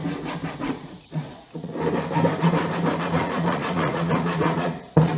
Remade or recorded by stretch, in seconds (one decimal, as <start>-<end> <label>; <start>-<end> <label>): 0.0-0.5 recorded; 0.5-1.7 remade; 1.7-3.0 recorded; 3.0-5.2 remade